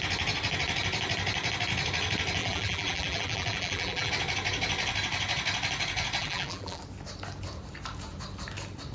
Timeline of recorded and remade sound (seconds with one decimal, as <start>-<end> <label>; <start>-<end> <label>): 0.0-2.4 recorded; 2.4-4.1 remade; 4.1-6.2 recorded; 6.2-6.8 remade; 6.8-8.9 recorded